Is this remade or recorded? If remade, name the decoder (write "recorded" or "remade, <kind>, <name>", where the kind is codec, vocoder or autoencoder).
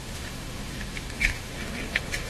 remade, autoencoder, DAC-VAE